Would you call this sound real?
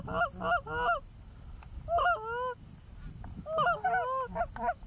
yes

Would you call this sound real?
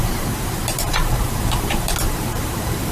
no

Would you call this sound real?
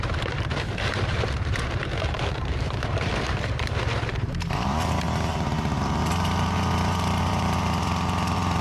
no